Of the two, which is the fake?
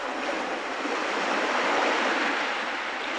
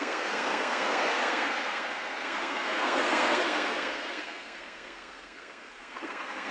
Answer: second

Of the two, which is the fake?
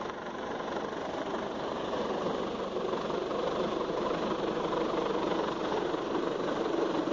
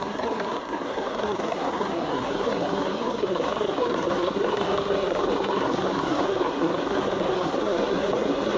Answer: second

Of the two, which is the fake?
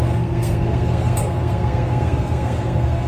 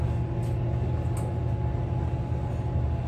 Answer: first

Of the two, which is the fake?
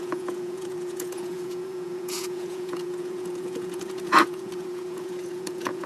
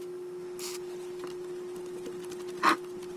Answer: first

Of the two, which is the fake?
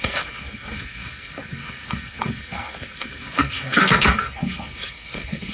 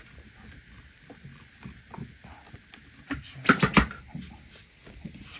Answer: first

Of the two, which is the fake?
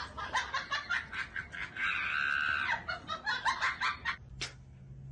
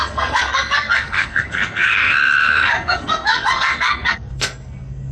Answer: second